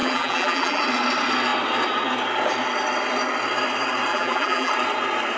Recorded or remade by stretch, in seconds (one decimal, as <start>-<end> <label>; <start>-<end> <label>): 0.0-0.8 remade; 0.8-4.1 recorded; 4.1-4.7 remade; 4.7-5.4 recorded